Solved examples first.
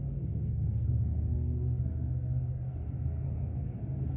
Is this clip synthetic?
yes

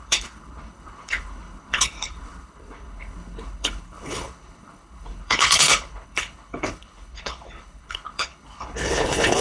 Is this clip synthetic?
yes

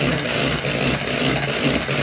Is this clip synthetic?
no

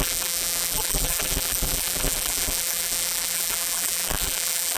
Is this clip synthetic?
yes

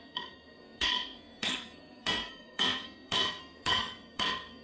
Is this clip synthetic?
yes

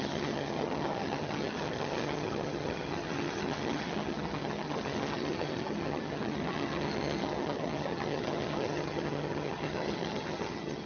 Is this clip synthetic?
yes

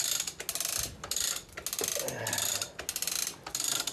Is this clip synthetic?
no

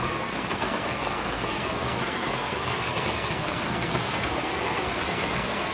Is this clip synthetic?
yes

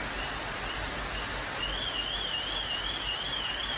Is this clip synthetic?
no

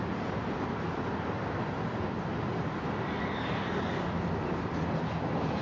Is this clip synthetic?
no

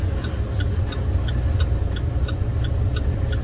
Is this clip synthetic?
no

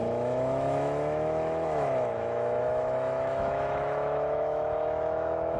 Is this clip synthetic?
yes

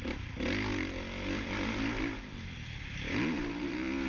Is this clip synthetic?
no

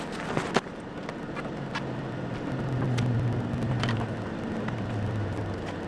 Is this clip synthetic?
no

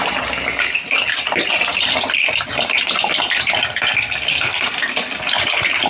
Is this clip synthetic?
no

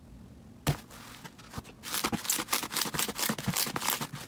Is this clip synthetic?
no